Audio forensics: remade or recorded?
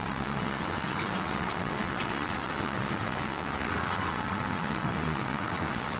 remade